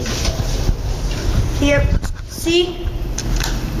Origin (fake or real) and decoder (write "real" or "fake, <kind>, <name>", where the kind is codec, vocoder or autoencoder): real